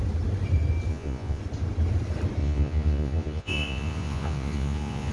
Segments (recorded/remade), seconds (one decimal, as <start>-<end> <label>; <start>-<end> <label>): 0.0-0.9 recorded; 0.9-1.4 remade; 1.4-2.4 recorded; 2.4-5.1 remade